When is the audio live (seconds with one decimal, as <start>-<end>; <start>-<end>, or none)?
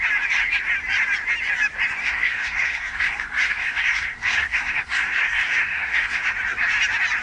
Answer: 0.0-2.0; 6.3-7.2